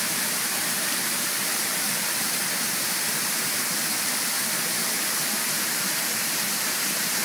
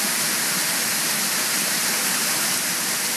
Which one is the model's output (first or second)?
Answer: first